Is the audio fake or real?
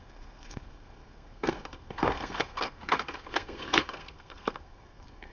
fake